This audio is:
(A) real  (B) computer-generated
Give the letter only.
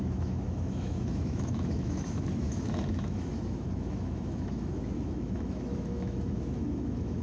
B